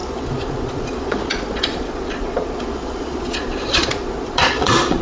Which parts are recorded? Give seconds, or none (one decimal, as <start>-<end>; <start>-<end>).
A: none